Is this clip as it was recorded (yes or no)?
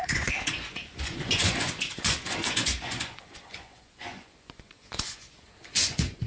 no